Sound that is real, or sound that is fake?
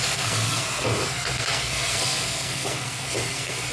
fake